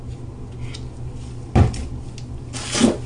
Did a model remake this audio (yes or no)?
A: no